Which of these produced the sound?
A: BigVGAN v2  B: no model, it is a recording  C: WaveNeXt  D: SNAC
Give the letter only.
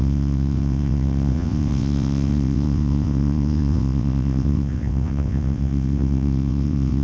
C